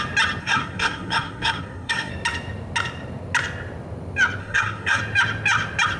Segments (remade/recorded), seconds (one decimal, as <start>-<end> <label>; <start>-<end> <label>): 0.0-0.4 recorded; 0.4-2.1 remade; 2.1-4.4 recorded; 4.4-5.0 remade; 5.0-6.0 recorded